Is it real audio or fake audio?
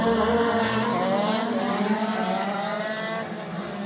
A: real